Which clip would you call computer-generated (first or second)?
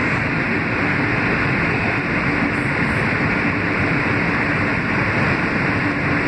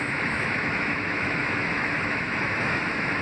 second